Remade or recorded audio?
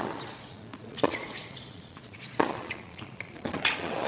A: remade